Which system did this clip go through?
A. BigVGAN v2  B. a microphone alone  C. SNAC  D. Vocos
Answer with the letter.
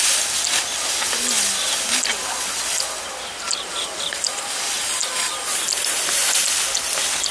B